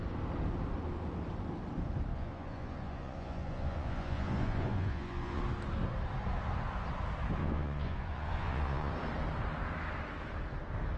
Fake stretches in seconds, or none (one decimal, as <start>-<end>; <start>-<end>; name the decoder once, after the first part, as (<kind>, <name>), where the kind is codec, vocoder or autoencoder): 2.1-5.4 (vocoder, Vocos); 7.4-8.9